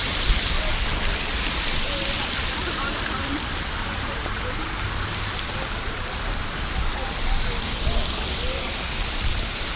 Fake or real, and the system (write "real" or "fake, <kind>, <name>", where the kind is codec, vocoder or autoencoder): real